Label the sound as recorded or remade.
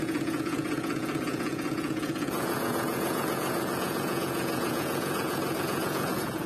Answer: remade